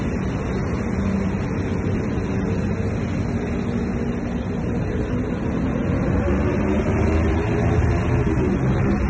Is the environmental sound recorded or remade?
recorded